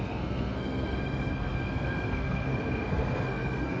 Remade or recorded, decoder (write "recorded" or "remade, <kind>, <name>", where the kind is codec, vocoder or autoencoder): remade, codec, SNAC